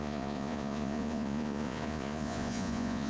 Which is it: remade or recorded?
remade